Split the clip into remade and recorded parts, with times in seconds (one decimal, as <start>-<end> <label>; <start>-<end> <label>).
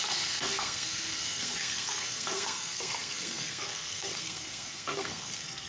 0.0-5.7 remade